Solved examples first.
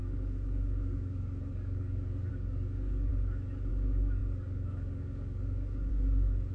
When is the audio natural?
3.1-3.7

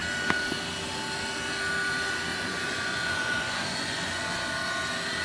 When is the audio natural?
0.0-2.3; 4.2-5.2

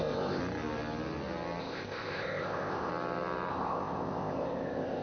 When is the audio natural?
0.4-1.6; 2.9-3.5

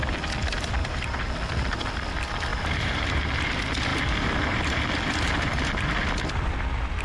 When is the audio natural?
0.0-0.8; 1.3-2.5; 3.5-3.9; 4.8-7.0

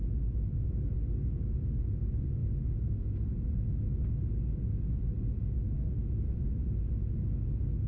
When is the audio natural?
0.0-7.9

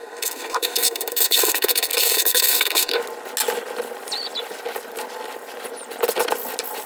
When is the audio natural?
3.0-6.9